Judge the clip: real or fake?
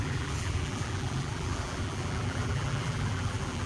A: fake